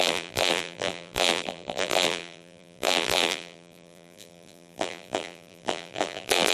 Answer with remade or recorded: remade